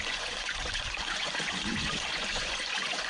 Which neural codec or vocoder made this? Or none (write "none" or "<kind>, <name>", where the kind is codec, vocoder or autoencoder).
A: vocoder, Vocos